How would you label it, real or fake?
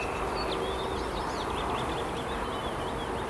real